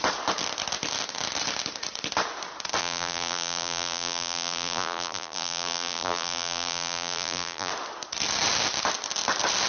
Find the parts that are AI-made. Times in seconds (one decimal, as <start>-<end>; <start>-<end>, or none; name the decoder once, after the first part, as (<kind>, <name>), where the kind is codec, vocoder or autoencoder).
2.8-7.7 (vocoder, BigVGAN v2)